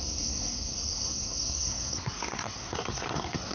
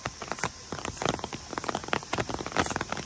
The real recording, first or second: second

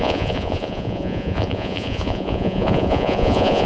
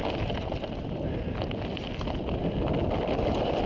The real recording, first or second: second